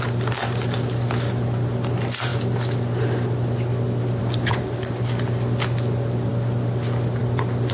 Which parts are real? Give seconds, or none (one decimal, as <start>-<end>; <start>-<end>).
0.0-7.7